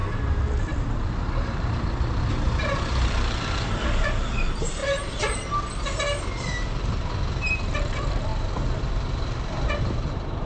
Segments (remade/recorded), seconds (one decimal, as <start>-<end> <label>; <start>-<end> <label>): 0.0-4.8 remade; 4.8-7.4 recorded; 7.4-8.3 remade; 8.3-9.8 recorded; 9.8-10.5 remade